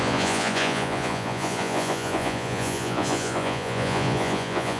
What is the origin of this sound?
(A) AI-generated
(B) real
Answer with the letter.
A